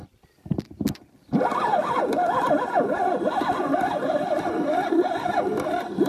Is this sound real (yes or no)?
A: no